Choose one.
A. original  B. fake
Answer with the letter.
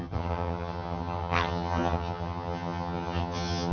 B